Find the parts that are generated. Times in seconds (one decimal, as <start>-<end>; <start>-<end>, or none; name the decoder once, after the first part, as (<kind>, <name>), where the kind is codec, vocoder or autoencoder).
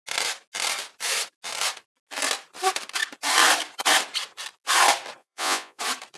5.2-5.8 (vocoder, Vocos)